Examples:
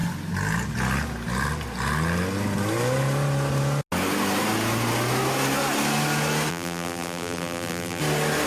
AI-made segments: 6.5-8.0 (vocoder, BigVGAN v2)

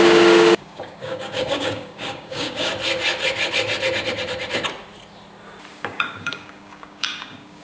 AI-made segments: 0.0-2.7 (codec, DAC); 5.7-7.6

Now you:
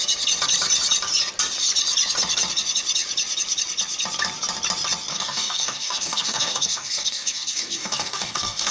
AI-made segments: 5.1-8.7 (codec, DAC)